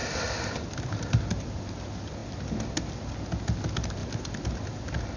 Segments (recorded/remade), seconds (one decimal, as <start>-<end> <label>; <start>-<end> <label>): 0.0-1.5 remade; 1.5-4.0 recorded; 4.0-4.6 remade; 4.6-5.2 recorded